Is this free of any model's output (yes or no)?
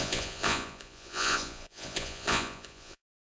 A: no